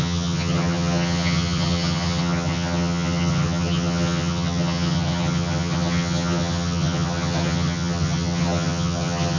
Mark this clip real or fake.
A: fake